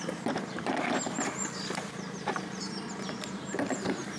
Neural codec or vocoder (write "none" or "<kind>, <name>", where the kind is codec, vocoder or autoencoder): vocoder, BigVGAN v2